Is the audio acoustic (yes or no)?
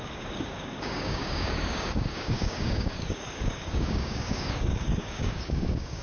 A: no